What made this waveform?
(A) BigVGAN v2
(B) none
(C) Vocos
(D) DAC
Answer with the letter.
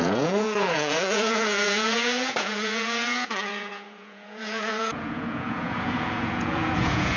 C